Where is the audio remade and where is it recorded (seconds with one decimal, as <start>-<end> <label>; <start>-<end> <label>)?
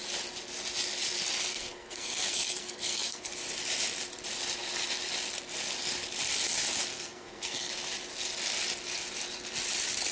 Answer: 0.0-1.5 recorded; 1.5-3.3 remade; 3.3-6.9 recorded; 6.9-7.7 remade; 7.7-10.1 recorded